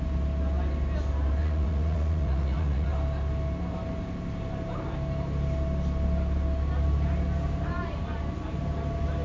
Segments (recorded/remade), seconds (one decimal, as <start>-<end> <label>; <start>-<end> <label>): 0.0-1.4 recorded; 1.4-2.9 remade; 2.9-9.2 recorded